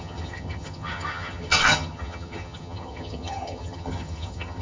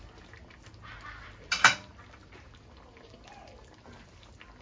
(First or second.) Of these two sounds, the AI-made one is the first